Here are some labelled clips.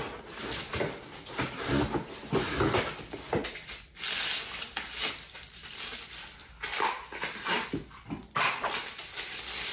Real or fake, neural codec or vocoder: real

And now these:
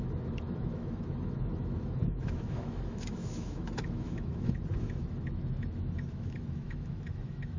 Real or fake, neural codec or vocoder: fake, autoencoder, DAC-VAE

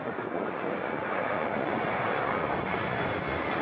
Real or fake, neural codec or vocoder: fake, vocoder, Vocos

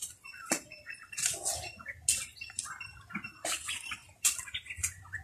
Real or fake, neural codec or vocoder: real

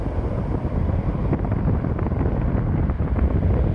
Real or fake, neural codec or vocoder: real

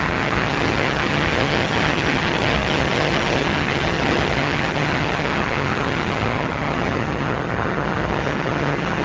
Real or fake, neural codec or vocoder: fake, vocoder, HiFi-GAN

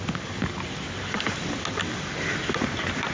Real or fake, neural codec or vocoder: real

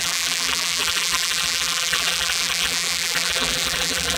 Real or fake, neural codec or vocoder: fake, vocoder, BigVGAN v2